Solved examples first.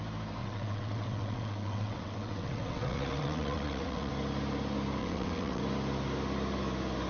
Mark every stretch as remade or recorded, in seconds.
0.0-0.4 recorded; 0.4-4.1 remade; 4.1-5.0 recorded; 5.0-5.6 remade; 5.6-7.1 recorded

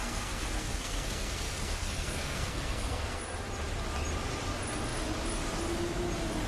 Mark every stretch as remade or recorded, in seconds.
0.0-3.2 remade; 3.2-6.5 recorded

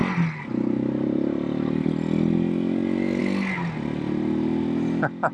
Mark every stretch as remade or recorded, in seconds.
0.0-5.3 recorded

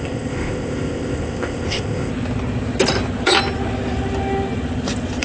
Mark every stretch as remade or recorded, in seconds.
0.0-2.1 remade; 2.1-5.2 recorded

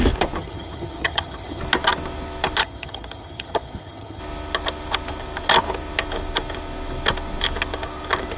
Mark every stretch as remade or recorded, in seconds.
0.0-0.4 recorded; 0.4-1.6 remade; 1.6-2.6 recorded; 2.6-4.2 remade; 4.2-8.4 recorded

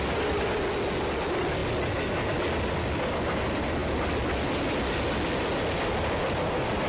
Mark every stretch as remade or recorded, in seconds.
0.0-6.9 recorded